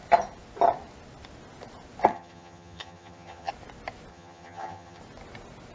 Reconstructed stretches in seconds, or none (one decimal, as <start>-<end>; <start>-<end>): 2.1-3.5; 4.1-5.0